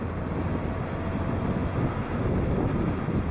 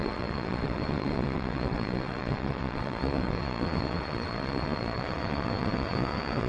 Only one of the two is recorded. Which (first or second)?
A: first